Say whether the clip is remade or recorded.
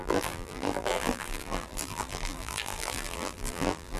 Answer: remade